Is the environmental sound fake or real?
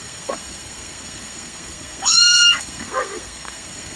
fake